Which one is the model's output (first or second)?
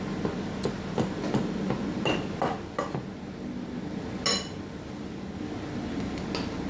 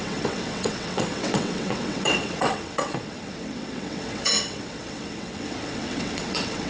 second